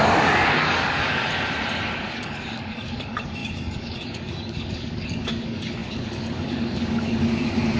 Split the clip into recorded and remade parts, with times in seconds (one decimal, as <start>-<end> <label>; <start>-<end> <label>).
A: 0.0-1.2 remade; 1.2-2.0 recorded; 2.0-7.8 remade